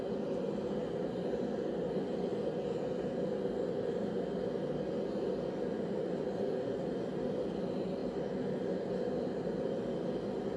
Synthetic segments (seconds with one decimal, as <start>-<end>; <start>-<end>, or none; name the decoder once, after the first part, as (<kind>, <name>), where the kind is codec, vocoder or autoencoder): none